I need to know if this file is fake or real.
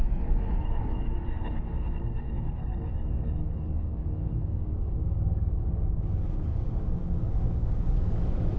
fake